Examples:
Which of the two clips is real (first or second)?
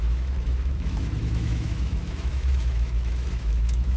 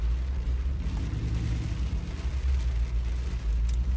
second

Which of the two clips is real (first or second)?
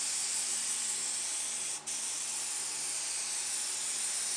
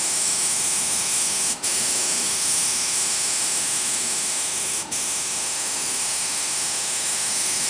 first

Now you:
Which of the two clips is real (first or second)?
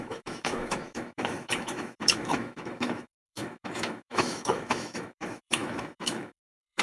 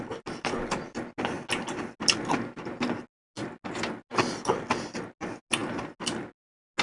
second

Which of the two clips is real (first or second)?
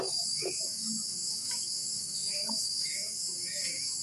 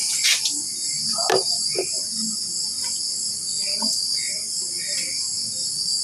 second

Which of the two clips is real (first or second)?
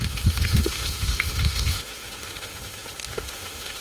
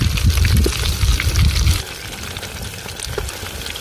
second